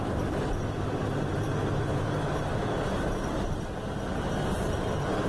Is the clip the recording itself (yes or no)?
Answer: yes